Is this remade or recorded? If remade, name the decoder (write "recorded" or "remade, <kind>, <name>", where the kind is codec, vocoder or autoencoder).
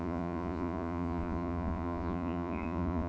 remade, vocoder, Vocos